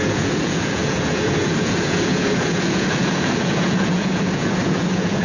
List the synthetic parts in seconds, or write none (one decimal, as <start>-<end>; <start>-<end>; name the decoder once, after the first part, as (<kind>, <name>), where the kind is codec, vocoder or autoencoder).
0.0-5.2 (vocoder, Vocos)